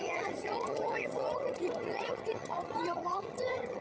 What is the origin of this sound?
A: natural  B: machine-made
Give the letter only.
B